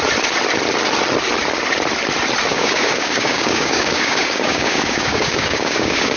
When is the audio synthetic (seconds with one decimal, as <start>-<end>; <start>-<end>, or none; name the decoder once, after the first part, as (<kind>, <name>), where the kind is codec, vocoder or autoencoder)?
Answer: 2.5-6.2 (codec, DAC)